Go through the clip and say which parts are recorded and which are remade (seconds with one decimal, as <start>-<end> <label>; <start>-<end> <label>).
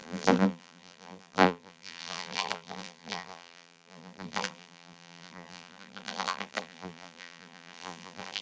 0.0-8.4 remade